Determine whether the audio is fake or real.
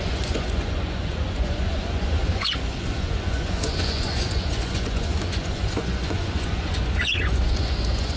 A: fake